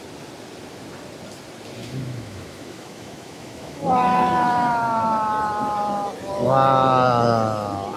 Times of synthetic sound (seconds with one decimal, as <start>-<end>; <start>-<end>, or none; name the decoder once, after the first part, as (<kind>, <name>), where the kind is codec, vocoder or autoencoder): 1.8-4.7 (autoencoder, DAC-VAE)